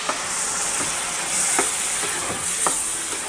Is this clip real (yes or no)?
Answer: yes